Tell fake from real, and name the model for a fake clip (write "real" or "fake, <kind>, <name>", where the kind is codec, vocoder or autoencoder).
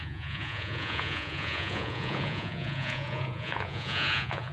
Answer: fake, vocoder, Vocos